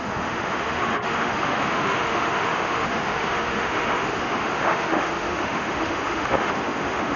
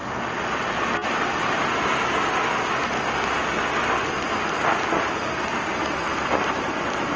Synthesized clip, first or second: first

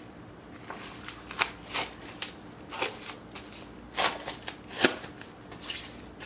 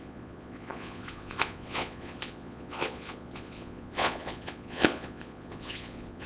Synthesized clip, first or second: second